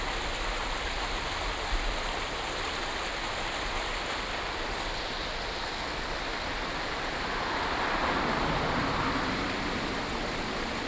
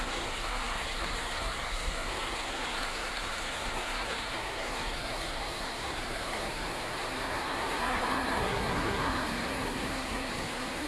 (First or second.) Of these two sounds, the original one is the first